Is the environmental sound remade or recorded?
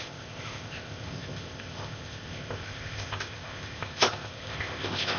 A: remade